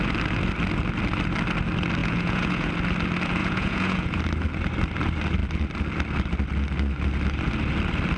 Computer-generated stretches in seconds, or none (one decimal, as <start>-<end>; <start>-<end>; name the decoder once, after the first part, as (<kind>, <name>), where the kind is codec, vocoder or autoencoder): 2.0-2.7 (vocoder, Vocos); 3.4-4.2